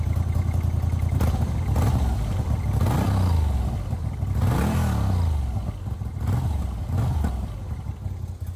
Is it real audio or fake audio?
real